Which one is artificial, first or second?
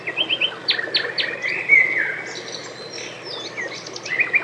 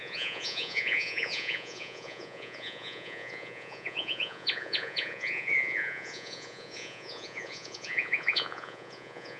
second